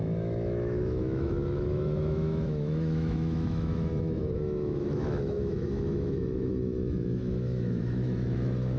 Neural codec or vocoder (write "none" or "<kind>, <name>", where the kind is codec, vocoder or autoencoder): autoencoder, DAC-VAE